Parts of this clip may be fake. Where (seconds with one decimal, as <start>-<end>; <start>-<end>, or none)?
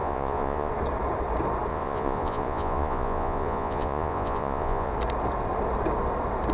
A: 0.0-0.7; 1.7-4.9